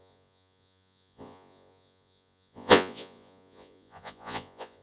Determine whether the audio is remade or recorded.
remade